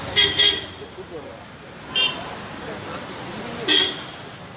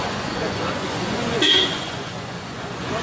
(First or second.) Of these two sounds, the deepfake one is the second